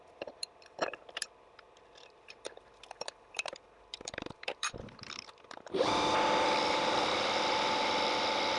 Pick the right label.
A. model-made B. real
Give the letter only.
A